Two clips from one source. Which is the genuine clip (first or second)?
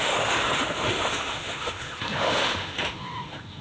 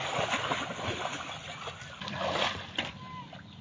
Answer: second